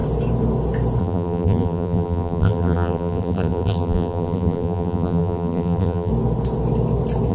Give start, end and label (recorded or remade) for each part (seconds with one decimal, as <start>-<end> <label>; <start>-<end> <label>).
0.0-1.0 recorded; 1.0-6.1 remade; 6.1-7.3 recorded